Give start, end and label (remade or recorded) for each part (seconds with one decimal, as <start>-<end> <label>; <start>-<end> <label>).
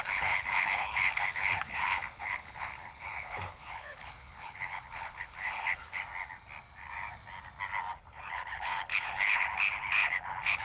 0.0-6.0 remade; 6.0-8.0 recorded; 8.0-10.6 remade